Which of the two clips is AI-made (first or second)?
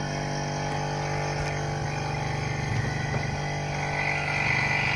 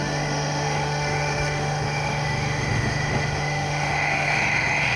second